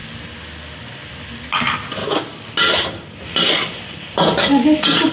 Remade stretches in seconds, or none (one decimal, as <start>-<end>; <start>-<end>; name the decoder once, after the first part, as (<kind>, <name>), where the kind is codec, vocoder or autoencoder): none